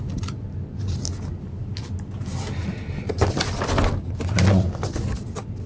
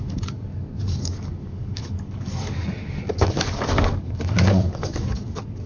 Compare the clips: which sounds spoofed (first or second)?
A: second